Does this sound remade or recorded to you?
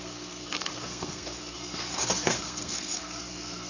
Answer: remade